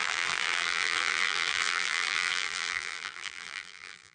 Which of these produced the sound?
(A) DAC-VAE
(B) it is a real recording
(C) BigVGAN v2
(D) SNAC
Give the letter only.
C